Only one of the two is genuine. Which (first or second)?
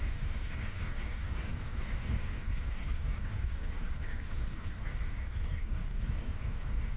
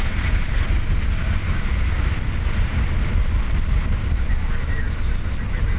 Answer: second